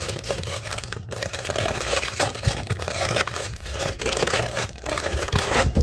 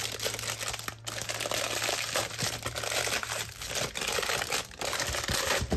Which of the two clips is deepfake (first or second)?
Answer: first